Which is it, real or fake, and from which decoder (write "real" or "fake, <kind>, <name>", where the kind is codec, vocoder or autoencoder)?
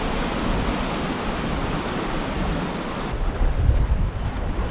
fake, vocoder, BigVGAN v2